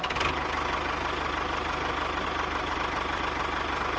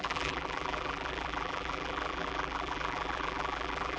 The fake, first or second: second